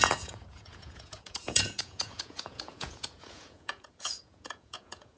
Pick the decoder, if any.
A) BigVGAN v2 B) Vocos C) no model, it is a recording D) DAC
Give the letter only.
B